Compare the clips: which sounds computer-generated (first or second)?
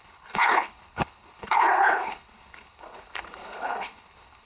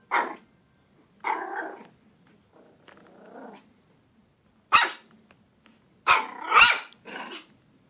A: first